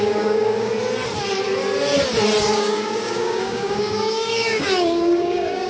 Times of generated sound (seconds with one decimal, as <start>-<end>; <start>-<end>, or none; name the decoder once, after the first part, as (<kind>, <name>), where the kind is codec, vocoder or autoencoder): 0.0-0.7 (codec, DAC); 2.4-5.7